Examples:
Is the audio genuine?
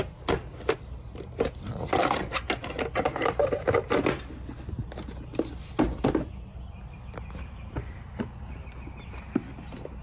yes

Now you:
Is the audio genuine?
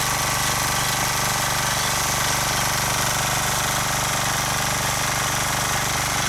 yes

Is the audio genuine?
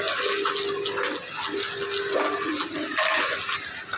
yes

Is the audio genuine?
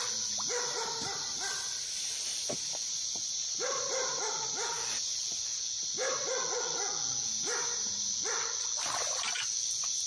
yes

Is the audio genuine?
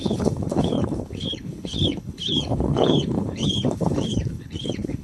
no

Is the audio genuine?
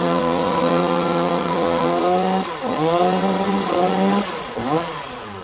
no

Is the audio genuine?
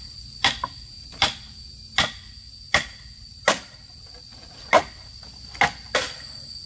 yes